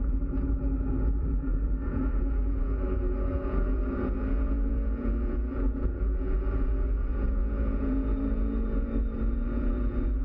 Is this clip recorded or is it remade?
remade